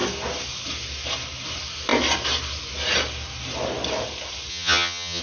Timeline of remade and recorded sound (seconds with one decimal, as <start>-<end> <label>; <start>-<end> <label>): 0.0-4.5 recorded; 4.5-5.2 remade